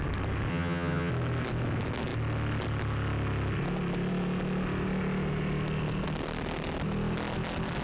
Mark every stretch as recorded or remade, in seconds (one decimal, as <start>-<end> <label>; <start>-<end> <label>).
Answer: 0.0-0.5 recorded; 0.5-1.1 remade; 1.1-7.8 recorded